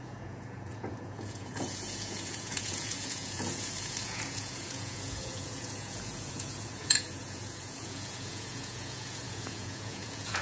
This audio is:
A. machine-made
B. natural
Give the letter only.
A